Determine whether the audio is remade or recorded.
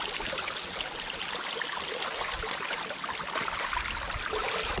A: recorded